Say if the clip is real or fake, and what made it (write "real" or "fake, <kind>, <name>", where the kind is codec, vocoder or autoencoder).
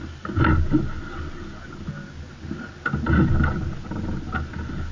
real